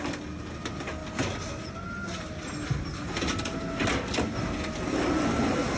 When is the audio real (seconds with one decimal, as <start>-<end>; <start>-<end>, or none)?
0.0-5.8